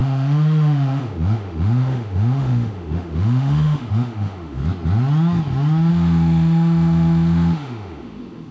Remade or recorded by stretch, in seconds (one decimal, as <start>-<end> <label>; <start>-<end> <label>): 0.0-4.6 remade; 4.6-5.9 recorded; 5.9-8.5 remade